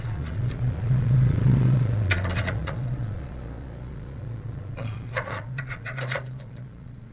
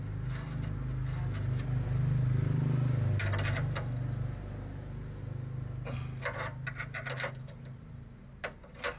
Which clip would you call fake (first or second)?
first